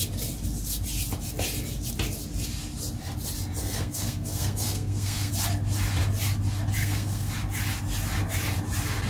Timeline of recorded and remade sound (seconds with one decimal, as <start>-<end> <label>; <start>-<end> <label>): 0.0-3.6 recorded; 3.6-5.3 remade; 5.3-6.8 recorded; 6.8-7.3 remade; 7.3-9.1 recorded